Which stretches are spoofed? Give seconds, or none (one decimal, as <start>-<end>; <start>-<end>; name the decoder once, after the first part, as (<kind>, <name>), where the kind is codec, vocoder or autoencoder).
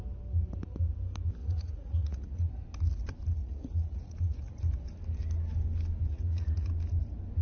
1.4-2.5 (vocoder, Vocos); 3.4-4.6; 6.1-6.7